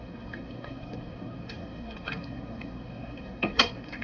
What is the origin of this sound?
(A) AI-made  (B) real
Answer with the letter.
A